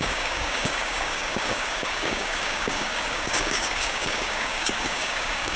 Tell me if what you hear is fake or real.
fake